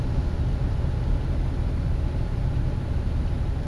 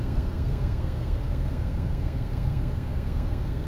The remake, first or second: second